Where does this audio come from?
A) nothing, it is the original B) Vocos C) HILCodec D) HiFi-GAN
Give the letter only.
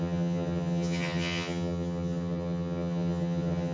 D